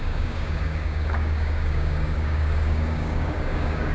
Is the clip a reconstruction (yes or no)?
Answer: yes